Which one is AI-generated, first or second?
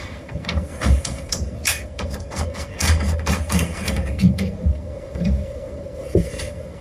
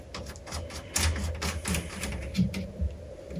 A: first